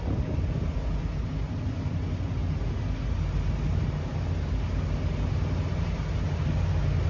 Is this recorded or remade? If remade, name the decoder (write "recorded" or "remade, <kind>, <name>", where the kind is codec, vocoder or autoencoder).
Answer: recorded